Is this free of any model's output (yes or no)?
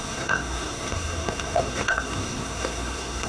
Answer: no